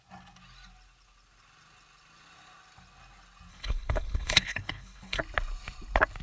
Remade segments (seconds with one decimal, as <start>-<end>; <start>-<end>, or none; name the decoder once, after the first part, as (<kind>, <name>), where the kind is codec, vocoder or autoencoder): 3.5-5.2 (codec, HILCodec)